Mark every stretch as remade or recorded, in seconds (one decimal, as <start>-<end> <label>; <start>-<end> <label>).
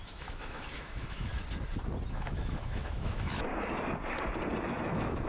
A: 0.0-1.3 remade; 1.3-2.1 recorded; 2.1-3.5 remade; 3.5-4.6 recorded; 4.6-5.3 remade